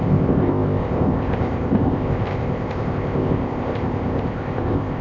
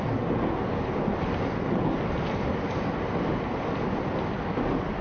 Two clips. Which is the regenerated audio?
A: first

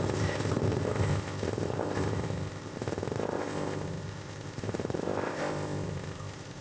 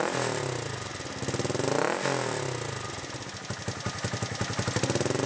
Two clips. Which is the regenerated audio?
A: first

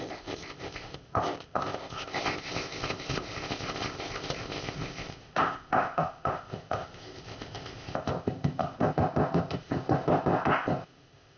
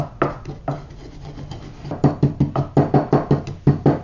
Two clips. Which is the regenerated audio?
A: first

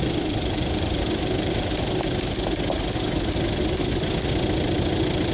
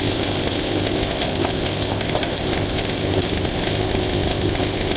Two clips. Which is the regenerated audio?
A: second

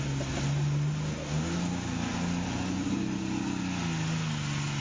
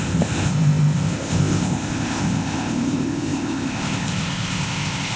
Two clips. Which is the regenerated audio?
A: second